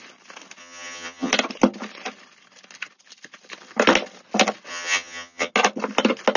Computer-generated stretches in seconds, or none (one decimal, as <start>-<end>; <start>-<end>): 0.6-1.3; 4.7-5.5